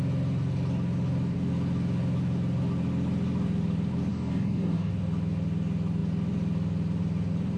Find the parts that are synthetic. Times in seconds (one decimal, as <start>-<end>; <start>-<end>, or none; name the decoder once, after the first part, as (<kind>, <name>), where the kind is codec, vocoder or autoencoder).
4.1-4.9 (codec, DAC)